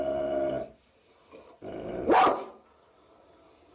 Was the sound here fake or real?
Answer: real